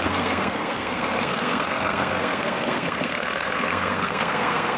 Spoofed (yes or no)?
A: yes